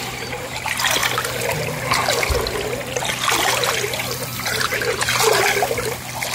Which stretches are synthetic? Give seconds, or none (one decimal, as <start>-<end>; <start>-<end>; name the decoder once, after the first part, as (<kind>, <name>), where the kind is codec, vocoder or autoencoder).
4.3-5.4 (vocoder, BigVGAN v2)

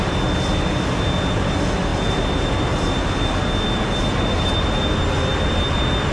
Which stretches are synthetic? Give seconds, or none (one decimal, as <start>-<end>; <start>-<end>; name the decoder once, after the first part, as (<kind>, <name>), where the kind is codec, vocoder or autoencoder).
none

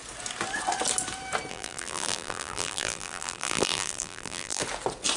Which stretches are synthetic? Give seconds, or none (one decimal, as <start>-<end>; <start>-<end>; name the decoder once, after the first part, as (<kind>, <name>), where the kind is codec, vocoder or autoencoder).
1.5-4.6 (vocoder, BigVGAN v2)

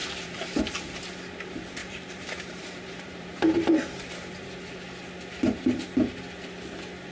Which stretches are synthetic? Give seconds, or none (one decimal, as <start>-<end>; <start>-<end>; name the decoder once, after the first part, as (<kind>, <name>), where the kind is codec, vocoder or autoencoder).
0.0-0.6 (vocoder, BigVGAN v2); 1.8-4.7

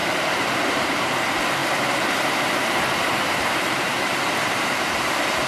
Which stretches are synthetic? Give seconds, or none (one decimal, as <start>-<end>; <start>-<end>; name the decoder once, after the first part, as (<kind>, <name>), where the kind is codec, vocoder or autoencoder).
0.0-5.5 (vocoder, BigVGAN v2)

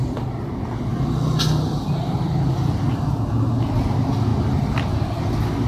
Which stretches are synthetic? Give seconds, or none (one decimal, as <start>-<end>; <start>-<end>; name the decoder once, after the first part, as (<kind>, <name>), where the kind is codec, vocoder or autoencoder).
none